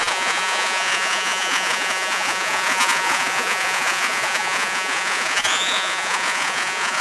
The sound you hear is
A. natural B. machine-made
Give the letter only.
B